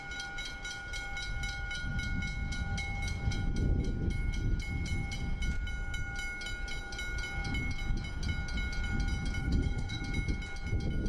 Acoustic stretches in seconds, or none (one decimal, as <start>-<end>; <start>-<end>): 0.0-9.4; 10.0-11.1

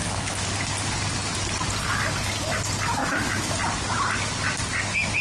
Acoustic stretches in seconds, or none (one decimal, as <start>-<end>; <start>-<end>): 0.5-3.0; 3.6-5.2

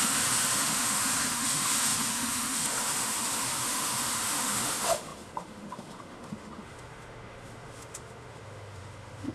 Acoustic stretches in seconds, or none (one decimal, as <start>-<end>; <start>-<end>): none

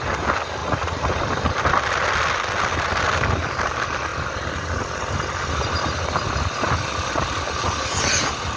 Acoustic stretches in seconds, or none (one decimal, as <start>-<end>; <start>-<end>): 0.0-0.6; 1.2-8.6

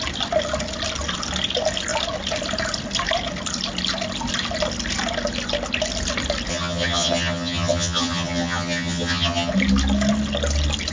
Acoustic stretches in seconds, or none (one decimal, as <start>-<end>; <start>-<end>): 0.0-6.5; 9.5-10.9

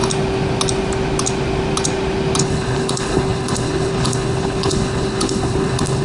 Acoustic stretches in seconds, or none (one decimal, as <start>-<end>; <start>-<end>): 0.0-2.4

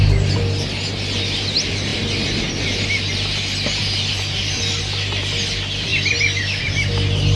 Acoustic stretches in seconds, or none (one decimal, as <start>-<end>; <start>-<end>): 0.0-7.4

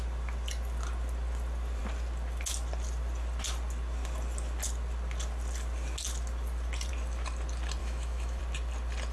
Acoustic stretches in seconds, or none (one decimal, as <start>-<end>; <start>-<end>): 0.0-7.8; 8.4-9.1